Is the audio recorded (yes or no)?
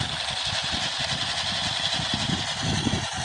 yes